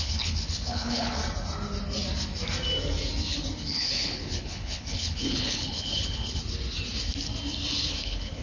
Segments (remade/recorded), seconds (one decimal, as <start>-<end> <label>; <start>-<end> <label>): 0.0-1.2 remade; 1.2-3.6 recorded; 3.6-6.4 remade; 6.4-7.7 recorded; 7.7-8.4 remade